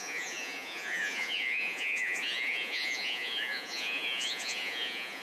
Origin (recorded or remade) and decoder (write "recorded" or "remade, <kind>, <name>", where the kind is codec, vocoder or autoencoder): remade, vocoder, Vocos